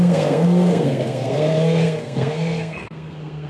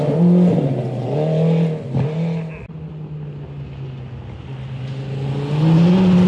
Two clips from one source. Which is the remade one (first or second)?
first